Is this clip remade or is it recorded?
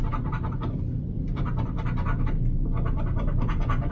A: remade